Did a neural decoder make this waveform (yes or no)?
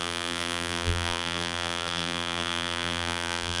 yes